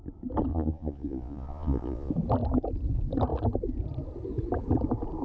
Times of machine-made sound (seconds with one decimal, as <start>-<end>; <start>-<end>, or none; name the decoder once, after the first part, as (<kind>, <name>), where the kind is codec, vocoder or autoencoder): 0.5-2.1 (vocoder, Vocos)